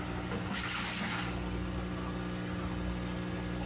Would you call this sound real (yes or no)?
yes